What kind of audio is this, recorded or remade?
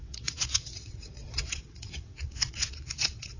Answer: remade